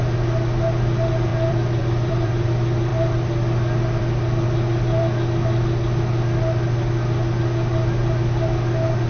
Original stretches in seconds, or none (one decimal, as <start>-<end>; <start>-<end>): 0.0-1.3; 2.5-9.1